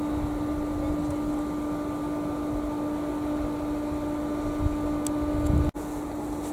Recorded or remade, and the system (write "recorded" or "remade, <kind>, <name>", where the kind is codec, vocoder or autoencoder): recorded